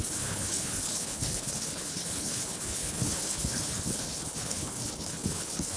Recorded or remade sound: remade